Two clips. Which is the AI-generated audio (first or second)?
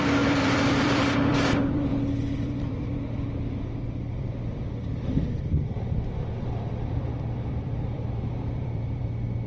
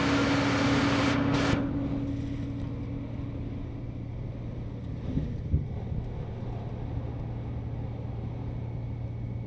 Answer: first